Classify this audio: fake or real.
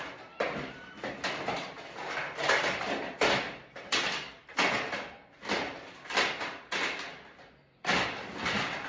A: real